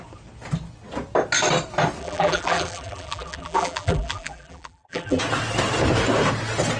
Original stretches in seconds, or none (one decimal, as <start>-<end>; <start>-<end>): 0.0-2.0; 5.2-6.8